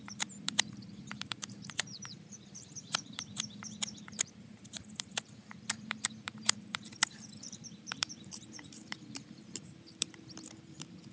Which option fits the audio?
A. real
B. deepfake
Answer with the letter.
B